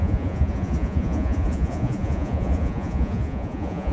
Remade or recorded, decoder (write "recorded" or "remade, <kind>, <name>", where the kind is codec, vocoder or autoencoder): remade, vocoder, Vocos